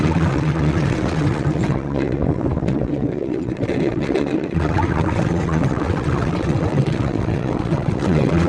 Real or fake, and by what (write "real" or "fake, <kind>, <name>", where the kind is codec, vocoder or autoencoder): fake, vocoder, WaveNeXt